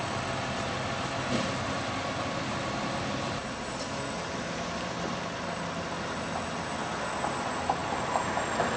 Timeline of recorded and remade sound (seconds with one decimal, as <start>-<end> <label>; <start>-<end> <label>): 0.0-8.8 recorded